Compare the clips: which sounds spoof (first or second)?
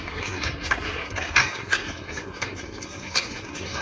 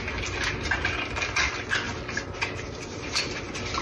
first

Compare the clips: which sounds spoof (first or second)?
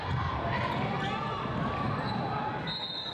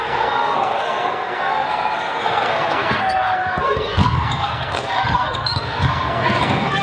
second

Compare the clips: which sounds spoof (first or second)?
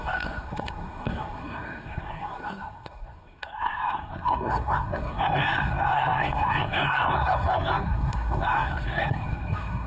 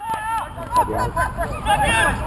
first